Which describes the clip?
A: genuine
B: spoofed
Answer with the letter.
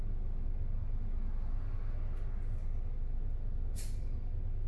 A